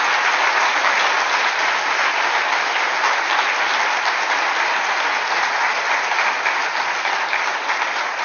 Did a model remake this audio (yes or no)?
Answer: no